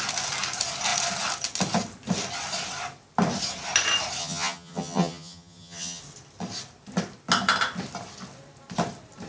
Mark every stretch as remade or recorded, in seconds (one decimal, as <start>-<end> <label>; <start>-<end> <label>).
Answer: 0.0-4.2 recorded; 4.2-6.0 remade; 6.0-9.3 recorded